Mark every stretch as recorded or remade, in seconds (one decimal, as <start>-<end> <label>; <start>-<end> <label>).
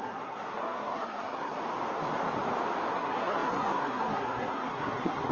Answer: 0.0-1.6 remade; 1.6-2.9 recorded; 2.9-5.3 remade